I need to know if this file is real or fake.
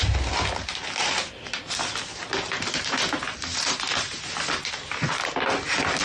real